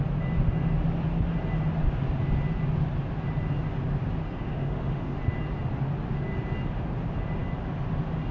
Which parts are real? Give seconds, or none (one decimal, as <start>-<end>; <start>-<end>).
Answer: 0.0-4.2; 5.2-8.3